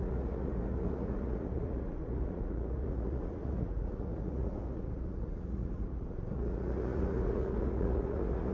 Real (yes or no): no